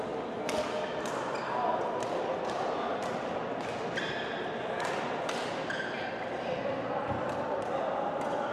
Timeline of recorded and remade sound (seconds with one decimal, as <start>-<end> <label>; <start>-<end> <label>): 0.0-8.5 recorded